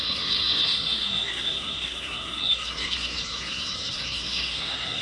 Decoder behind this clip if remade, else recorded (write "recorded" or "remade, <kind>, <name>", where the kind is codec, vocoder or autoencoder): remade, codec, SNAC